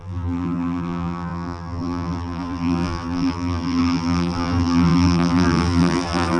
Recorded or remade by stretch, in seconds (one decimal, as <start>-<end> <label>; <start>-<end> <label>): 0.0-6.4 remade